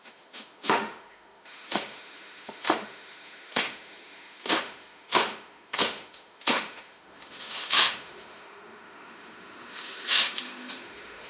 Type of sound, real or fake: fake